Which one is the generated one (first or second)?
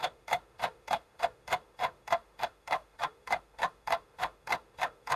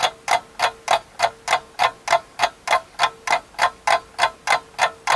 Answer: first